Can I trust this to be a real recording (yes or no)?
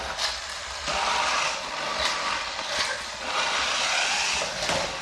yes